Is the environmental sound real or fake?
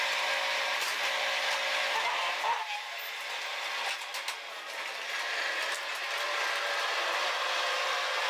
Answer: real